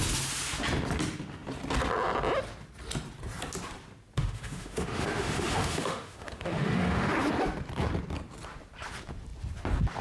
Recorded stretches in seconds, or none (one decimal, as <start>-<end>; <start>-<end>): 0.0-4.2; 7.1-10.0